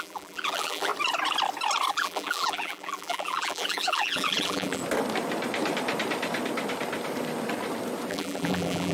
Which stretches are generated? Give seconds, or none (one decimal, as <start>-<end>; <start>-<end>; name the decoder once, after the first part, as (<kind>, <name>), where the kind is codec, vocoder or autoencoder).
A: 0.0-0.9 (vocoder, BigVGAN v2); 1.9-4.8; 8.1-8.9